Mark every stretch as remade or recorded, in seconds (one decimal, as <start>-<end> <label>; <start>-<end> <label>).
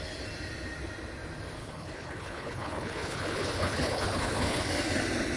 0.0-1.6 recorded; 1.6-4.6 remade; 4.6-5.4 recorded